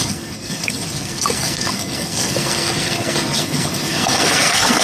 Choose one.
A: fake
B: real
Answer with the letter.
A